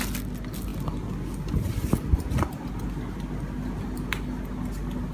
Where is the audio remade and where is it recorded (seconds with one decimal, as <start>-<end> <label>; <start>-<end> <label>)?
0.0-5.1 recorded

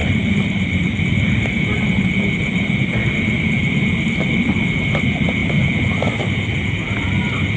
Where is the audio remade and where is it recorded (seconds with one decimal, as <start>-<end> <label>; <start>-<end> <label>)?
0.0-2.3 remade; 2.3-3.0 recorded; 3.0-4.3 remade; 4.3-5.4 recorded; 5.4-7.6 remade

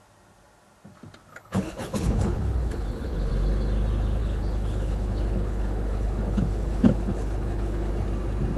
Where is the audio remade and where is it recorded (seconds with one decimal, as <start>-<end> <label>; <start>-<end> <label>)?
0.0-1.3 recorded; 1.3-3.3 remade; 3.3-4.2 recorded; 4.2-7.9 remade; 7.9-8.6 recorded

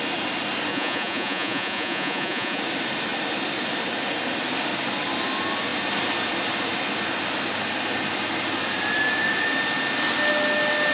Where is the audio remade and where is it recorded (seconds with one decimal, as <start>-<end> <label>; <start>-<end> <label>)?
0.0-0.7 recorded; 0.7-2.6 remade; 2.6-10.9 recorded

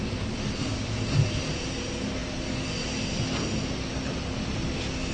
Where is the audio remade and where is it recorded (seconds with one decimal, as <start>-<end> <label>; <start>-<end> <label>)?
0.0-0.6 recorded; 0.6-1.7 remade; 1.7-5.1 recorded

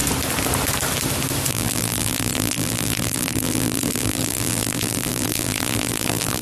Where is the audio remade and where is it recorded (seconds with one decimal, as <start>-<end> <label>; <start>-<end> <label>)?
0.0-1.5 recorded; 1.5-6.4 remade

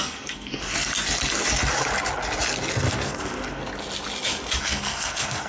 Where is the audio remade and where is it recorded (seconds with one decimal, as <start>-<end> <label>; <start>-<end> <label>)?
0.0-0.7 remade; 0.7-2.9 recorded; 2.9-3.6 remade; 3.6-4.6 recorded; 4.6-5.5 remade

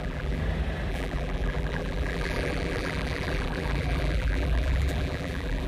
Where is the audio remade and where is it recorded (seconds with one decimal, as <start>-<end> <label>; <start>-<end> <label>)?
0.0-0.4 remade; 0.4-0.9 recorded; 0.9-5.7 remade